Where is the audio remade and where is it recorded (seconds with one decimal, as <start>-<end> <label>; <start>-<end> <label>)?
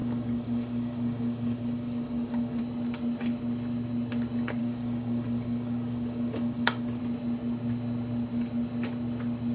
0.0-2.6 remade; 2.6-4.6 recorded; 4.6-7.0 remade; 7.0-9.5 recorded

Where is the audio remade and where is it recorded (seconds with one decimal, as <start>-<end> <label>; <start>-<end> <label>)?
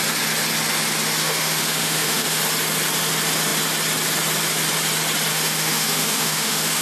0.0-1.2 recorded; 1.2-2.4 remade; 2.4-5.3 recorded; 5.3-6.8 remade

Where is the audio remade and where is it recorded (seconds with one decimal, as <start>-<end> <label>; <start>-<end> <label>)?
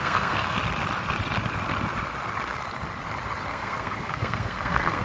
0.0-0.6 remade; 0.6-3.5 recorded; 3.5-5.0 remade